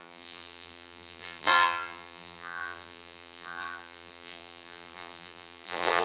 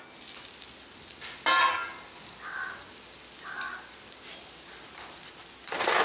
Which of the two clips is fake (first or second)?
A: first